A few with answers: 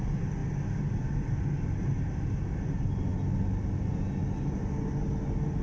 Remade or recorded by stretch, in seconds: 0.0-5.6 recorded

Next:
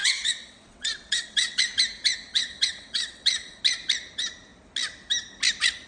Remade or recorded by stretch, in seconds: 0.0-1.6 remade; 1.6-2.3 recorded; 2.3-3.6 remade; 3.6-5.9 recorded

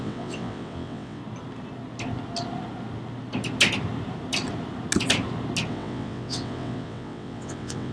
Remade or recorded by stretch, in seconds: 0.0-1.2 remade; 1.2-5.7 recorded; 5.7-7.9 remade

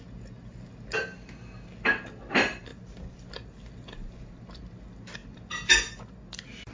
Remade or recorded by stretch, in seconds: 0.0-6.7 recorded

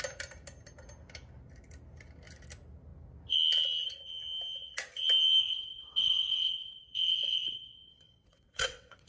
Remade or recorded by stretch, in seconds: 0.0-5.4 recorded; 5.4-9.1 remade

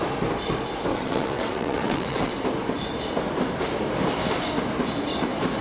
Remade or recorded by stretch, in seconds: 0.0-0.9 recorded; 0.9-2.3 remade; 2.3-5.6 recorded

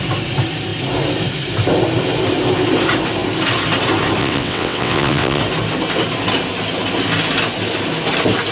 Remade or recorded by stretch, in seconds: 0.0-4.2 recorded; 4.2-5.4 remade; 5.4-8.5 recorded